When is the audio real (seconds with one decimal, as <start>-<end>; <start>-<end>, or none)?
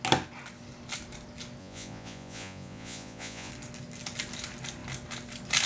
0.0-1.6; 3.5-5.7